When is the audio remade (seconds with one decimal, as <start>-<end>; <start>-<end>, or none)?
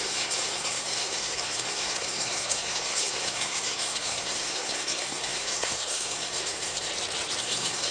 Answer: 0.0-6.9; 7.4-7.9